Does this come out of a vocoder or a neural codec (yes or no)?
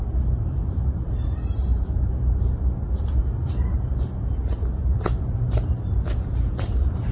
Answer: yes